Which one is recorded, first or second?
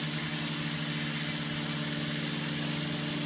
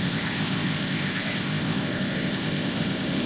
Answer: first